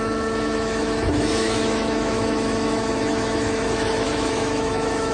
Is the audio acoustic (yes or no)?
no